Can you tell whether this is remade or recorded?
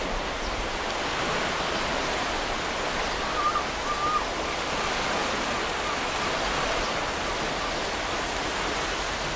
recorded